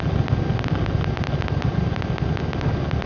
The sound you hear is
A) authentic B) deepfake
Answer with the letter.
A